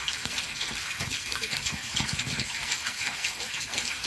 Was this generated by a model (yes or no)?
yes